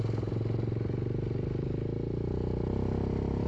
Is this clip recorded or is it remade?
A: recorded